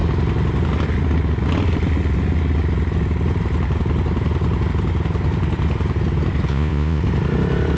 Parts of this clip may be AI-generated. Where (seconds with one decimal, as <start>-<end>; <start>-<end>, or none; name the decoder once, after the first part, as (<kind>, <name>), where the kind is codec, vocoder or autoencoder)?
6.5-7.0 (vocoder, Vocos)